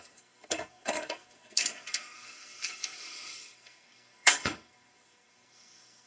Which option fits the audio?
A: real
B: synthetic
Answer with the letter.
B